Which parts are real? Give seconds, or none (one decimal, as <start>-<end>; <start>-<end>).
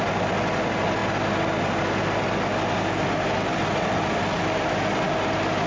0.0-5.7